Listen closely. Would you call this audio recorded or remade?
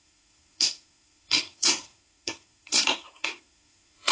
remade